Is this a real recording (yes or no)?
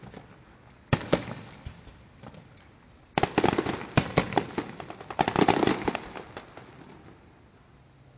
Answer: yes